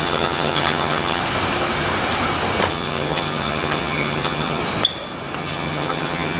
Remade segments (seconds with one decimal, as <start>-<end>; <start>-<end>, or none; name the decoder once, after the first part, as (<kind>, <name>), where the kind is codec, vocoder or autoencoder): 0.0-1.2 (vocoder, HiFi-GAN); 2.7-4.6; 5.4-6.4